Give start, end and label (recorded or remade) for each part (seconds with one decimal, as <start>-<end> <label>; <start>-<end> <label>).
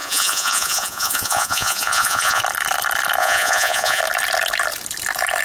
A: 0.0-2.4 remade; 2.4-3.2 recorded; 3.2-4.0 remade; 4.0-5.4 recorded